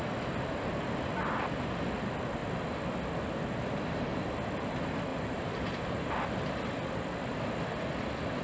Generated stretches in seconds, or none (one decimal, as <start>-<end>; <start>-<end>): 5.1-6.1